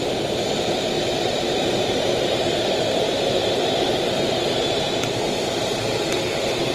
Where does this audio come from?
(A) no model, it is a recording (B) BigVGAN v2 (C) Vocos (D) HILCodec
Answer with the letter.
B